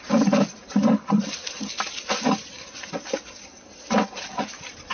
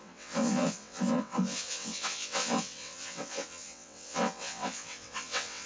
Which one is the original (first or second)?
first